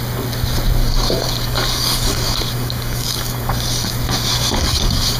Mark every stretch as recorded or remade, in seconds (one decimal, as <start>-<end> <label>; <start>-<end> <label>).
0.0-0.8 recorded; 0.8-3.7 remade; 3.7-4.3 recorded; 4.3-5.2 remade